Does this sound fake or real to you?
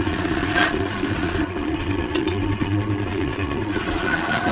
fake